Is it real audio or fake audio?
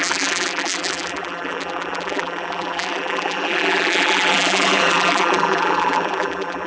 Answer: fake